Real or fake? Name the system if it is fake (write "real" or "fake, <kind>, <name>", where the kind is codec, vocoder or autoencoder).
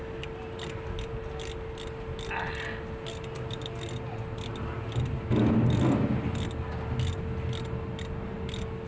real